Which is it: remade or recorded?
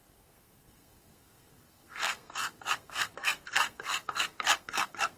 remade